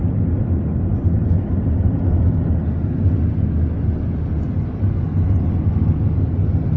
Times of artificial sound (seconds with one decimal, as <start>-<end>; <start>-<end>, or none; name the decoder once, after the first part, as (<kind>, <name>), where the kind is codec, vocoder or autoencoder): none